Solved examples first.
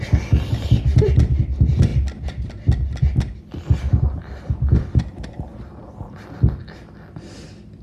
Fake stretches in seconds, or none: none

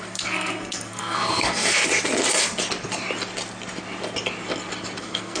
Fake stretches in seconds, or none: 0.0-1.8 (codec, SNAC); 5.0-5.4

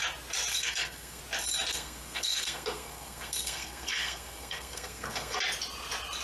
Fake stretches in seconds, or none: 0.5-1.2 (codec, SNAC); 1.7-5.4

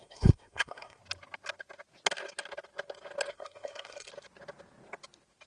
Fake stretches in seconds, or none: 0.0-1.0 (codec, SNAC); 3.3-4.1

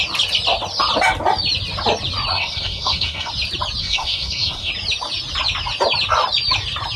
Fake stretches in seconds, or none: 2.3-3.3 (codec, SNAC); 3.8-4.7

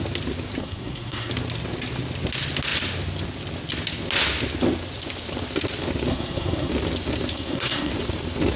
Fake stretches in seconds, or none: 0.6-1.3 (codec, SNAC); 6.1-6.7; 7.3-7.9